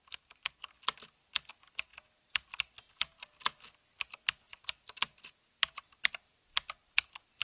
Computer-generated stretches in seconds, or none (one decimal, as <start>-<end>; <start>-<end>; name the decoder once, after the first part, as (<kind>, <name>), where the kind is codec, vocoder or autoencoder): none